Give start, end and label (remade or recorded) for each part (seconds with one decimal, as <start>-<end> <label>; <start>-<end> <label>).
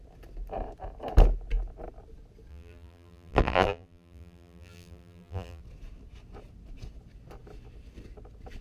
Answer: 0.0-2.5 recorded; 2.5-5.6 remade; 5.6-8.6 recorded